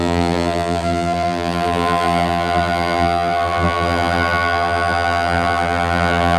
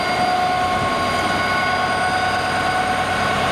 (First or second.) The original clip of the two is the second